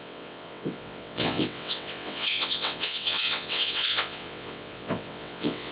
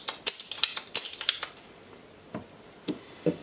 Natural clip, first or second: second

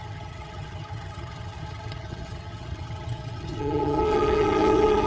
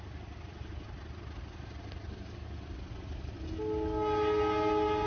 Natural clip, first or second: second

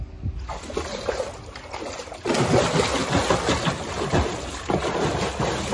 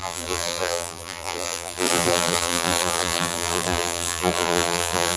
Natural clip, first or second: first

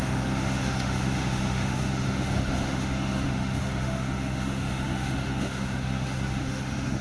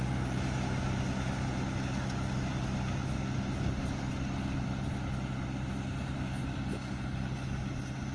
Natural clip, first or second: second